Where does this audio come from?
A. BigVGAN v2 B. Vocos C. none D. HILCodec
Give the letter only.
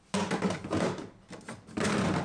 C